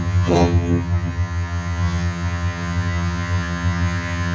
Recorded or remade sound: remade